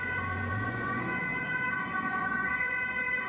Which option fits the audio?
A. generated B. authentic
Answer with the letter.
A